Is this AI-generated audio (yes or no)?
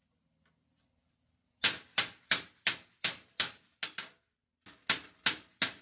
no